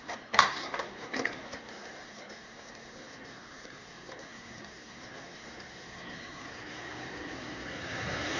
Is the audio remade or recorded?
remade